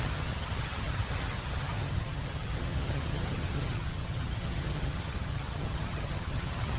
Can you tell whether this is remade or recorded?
remade